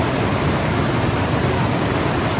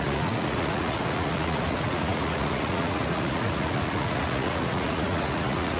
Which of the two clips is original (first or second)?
first